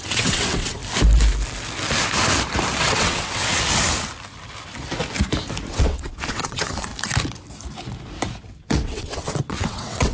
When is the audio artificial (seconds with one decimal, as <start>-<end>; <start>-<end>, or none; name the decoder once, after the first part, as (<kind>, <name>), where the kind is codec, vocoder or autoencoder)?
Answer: 0.0-0.8 (vocoder, WaveNeXt); 2.8-3.4; 5.7-6.9; 8.6-10.1